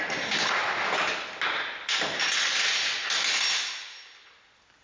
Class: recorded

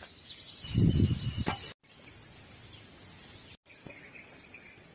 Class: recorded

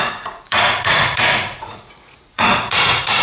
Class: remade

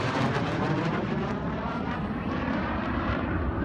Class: remade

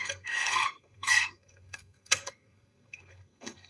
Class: remade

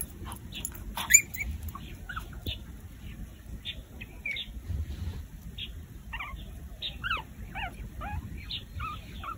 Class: recorded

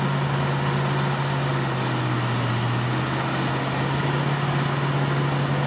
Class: recorded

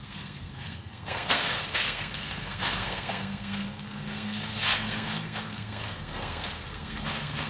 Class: remade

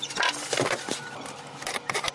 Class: remade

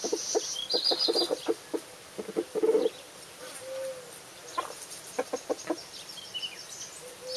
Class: recorded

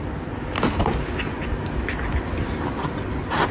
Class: recorded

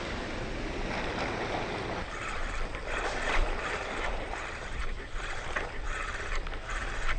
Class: recorded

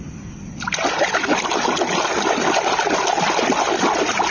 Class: recorded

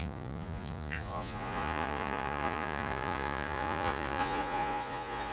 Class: remade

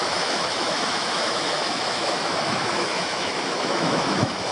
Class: remade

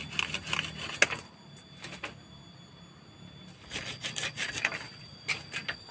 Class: recorded